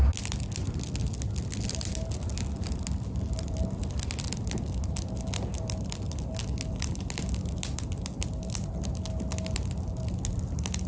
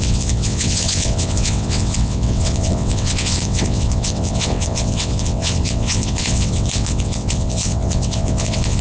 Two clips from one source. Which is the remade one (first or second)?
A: second